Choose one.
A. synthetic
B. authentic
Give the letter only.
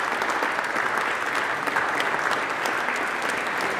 B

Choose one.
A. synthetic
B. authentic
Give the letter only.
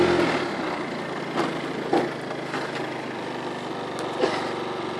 B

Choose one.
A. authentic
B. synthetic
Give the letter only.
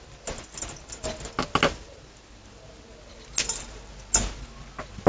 A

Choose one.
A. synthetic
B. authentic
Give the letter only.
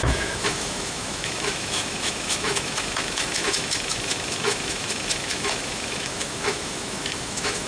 A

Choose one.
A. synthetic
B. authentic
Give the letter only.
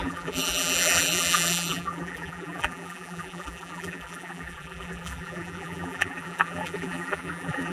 A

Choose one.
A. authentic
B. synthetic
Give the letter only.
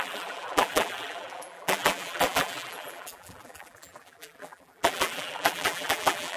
B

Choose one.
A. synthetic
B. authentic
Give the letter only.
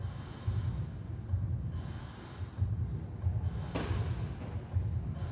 B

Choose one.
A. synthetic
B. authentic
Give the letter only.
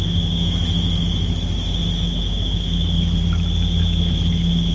A